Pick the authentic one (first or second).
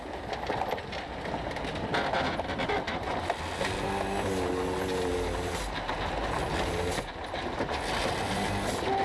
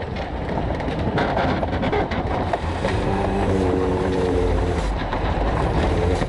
first